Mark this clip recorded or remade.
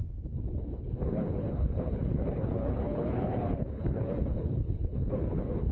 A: remade